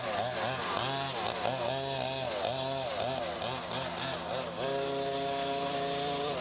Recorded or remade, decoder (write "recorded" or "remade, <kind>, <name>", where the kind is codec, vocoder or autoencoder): recorded